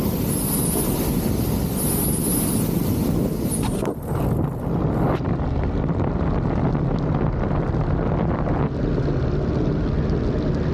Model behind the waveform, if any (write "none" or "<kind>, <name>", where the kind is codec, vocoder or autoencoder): none